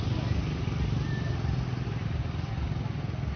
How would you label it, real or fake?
real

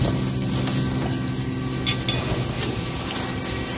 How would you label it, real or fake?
real